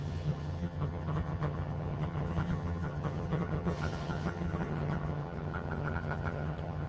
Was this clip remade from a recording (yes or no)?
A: yes